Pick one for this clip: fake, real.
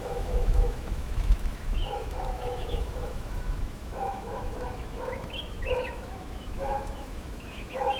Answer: fake